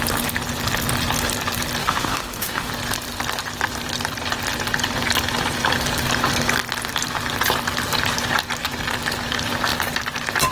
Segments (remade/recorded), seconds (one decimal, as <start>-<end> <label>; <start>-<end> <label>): 0.0-1.8 recorded; 1.8-2.7 remade; 2.7-10.5 recorded